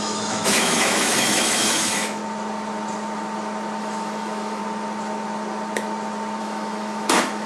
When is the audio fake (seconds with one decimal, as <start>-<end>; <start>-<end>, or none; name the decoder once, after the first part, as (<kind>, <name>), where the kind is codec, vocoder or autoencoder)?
0.0-2.2 (autoencoder, DAC-VAE); 3.8-4.6; 6.4-7.5